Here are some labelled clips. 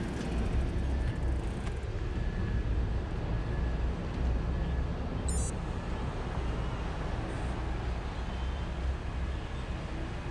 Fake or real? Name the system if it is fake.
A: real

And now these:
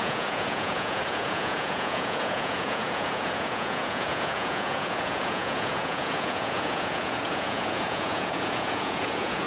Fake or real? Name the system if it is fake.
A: fake, vocoder, Vocos